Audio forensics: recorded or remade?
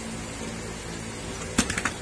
recorded